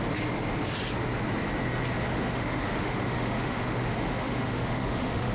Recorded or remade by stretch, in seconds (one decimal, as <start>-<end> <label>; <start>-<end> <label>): 0.0-2.1 recorded; 2.1-5.3 remade